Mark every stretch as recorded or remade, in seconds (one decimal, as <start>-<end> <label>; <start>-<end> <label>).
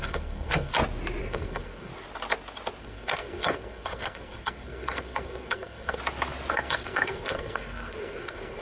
0.0-0.7 remade; 0.7-1.2 recorded; 1.2-1.9 remade; 1.9-2.8 recorded; 2.8-6.0 remade; 6.0-6.5 recorded; 6.5-8.6 remade